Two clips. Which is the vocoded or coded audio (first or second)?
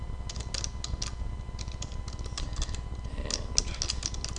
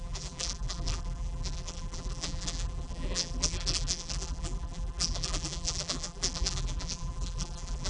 second